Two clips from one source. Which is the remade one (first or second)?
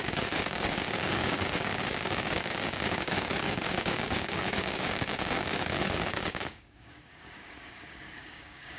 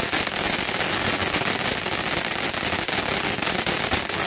first